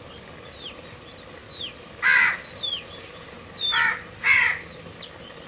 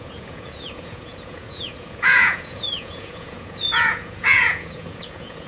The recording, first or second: first